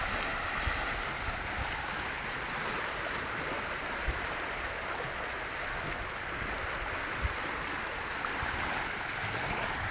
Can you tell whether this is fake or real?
real